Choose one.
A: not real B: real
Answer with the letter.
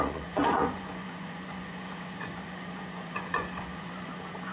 A